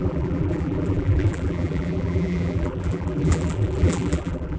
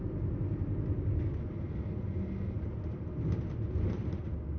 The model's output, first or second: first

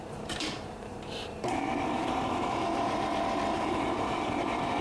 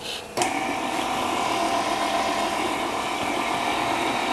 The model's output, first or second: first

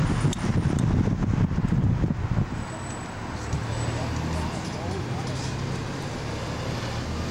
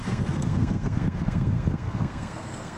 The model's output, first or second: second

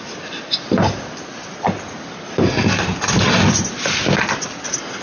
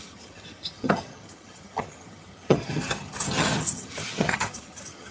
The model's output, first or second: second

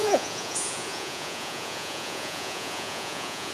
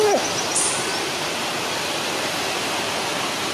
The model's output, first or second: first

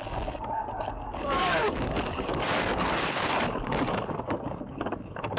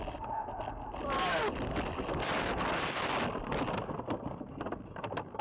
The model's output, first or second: first